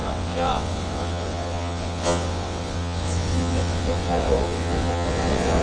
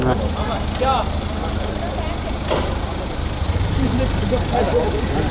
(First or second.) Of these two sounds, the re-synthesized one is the first